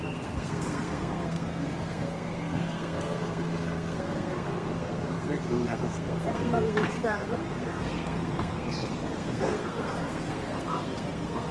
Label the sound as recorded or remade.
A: remade